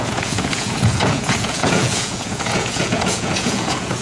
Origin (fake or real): fake